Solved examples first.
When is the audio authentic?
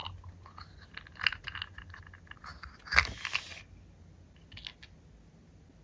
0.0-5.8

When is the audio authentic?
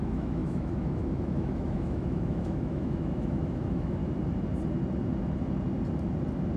4.0-6.6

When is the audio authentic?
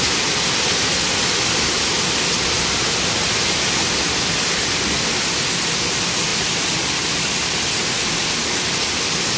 0.0-9.4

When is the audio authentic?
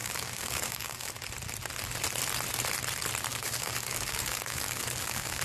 1.1-3.3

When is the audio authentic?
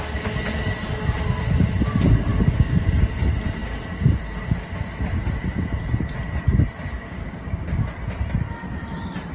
0.0-2.3; 2.9-6.9; 7.9-9.3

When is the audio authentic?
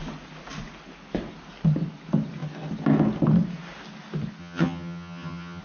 0.0-4.4